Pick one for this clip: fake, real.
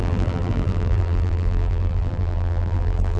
fake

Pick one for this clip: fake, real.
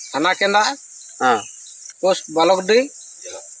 real